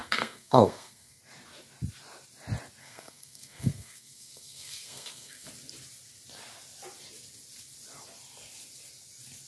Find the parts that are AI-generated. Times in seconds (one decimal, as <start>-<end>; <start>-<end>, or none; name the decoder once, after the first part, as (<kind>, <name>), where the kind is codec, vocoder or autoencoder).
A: 0.0-1.2 (codec, SNAC); 2.8-5.5